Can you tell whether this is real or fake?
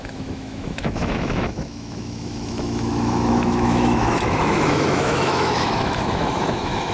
fake